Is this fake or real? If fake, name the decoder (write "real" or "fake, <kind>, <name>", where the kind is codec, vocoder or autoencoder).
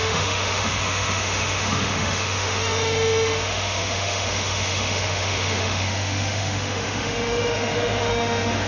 fake, autoencoder, DAC-VAE